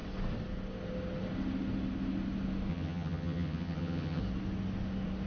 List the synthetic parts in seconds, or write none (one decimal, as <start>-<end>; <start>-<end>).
2.7-4.2